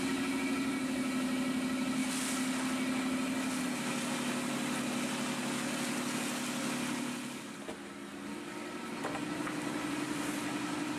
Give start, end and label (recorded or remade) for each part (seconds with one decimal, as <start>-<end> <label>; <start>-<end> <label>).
0.0-11.0 recorded